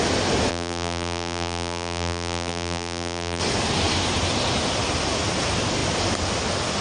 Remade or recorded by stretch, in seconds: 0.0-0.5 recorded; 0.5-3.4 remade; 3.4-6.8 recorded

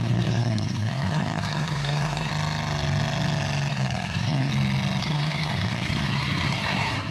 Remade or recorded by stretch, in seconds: 0.0-2.3 remade; 2.3-3.7 recorded; 3.7-4.5 remade; 4.5-5.0 recorded; 5.0-7.1 remade